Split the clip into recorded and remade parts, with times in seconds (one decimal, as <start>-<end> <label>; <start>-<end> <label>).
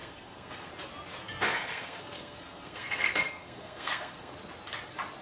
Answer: 0.0-0.7 remade; 0.7-1.2 recorded; 1.2-4.3 remade; 4.3-5.2 recorded